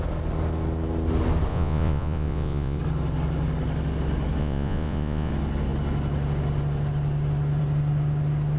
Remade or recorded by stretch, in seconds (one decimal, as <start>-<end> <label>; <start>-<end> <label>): 0.0-1.5 recorded; 1.5-2.8 remade; 2.8-4.4 recorded; 4.4-5.3 remade; 5.3-8.6 recorded